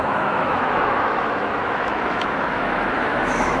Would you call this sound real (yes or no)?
no